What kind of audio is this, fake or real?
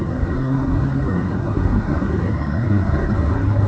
fake